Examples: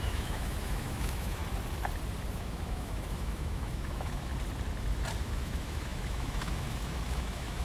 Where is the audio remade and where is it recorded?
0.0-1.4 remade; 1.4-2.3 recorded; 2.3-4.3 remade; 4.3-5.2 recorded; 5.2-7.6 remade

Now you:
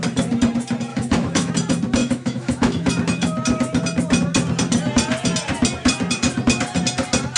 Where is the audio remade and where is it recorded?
0.0-0.9 recorded; 0.9-1.5 remade; 1.5-2.0 recorded; 2.0-2.9 remade; 2.9-7.4 recorded

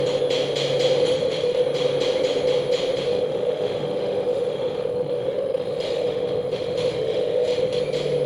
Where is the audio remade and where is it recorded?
0.0-1.0 recorded; 1.0-1.6 remade; 1.6-3.1 recorded; 3.1-7.8 remade; 7.8-8.3 recorded

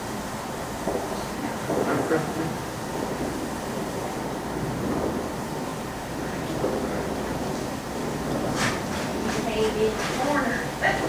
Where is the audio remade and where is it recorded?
0.0-1.8 recorded; 1.8-2.7 remade; 2.7-11.1 recorded